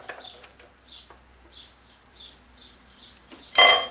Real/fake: real